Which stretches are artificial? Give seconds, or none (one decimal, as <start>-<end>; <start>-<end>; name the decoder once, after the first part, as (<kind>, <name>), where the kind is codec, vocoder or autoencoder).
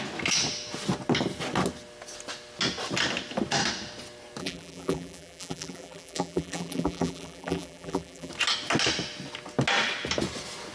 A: 4.4-8.3 (vocoder, BigVGAN v2)